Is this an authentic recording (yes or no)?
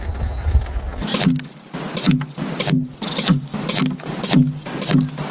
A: yes